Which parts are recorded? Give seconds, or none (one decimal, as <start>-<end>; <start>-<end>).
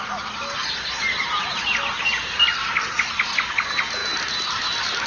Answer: 0.0-5.1